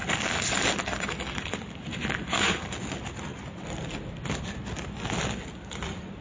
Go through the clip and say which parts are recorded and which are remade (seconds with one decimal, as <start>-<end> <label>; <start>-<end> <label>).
0.0-6.2 recorded